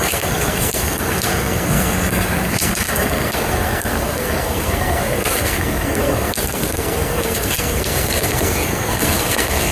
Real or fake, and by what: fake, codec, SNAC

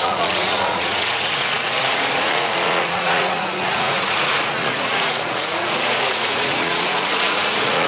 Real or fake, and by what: fake, vocoder, Vocos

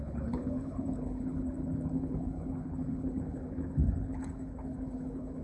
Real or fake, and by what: fake, codec, HILCodec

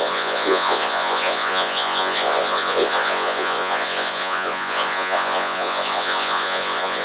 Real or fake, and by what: fake, vocoder, Vocos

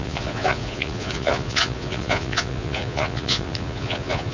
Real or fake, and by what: fake, vocoder, Vocos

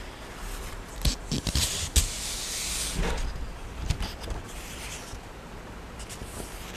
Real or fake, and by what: real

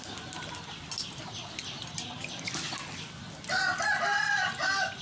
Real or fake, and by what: real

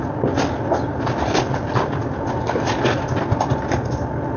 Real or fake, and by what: real